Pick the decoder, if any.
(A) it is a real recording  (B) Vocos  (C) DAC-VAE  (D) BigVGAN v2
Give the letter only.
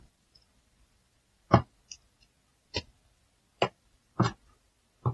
D